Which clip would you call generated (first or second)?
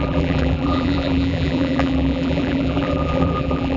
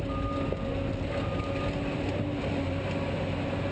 first